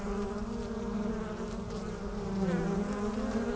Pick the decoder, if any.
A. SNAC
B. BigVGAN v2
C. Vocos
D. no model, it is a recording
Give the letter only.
D